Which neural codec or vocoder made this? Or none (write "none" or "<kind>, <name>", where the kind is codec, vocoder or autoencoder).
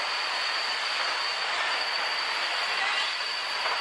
none